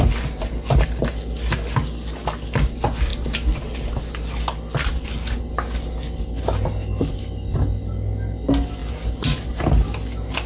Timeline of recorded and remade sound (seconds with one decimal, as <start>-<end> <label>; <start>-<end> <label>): 0.0-10.5 recorded